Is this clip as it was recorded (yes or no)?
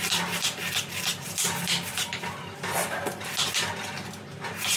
yes